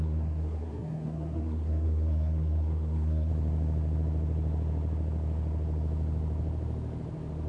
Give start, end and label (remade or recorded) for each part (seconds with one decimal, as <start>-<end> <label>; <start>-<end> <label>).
0.0-3.3 remade; 3.3-7.5 recorded